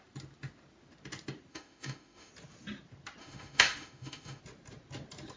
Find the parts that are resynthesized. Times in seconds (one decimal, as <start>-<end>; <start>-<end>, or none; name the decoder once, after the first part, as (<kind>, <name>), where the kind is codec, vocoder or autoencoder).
1.5-2.3 (autoencoder, DAC-VAE); 3.2-4.4